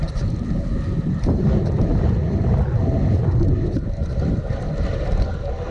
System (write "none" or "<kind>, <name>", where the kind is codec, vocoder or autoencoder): none